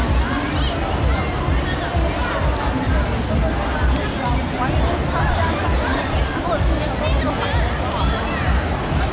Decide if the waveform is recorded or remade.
recorded